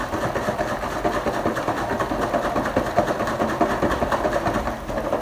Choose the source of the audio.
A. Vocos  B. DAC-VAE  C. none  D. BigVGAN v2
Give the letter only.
C